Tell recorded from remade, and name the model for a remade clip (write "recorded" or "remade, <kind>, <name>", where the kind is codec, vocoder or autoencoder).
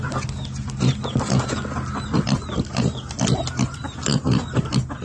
recorded